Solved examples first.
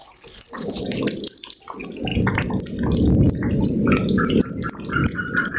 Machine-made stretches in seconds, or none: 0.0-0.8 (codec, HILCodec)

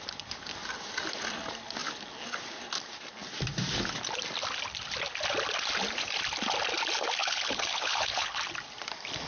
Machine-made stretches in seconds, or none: 7.2-8.4 (codec, HILCodec)

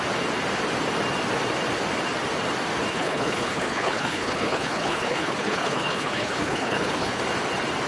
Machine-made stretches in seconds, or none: 2.9-7.2 (codec, HILCodec)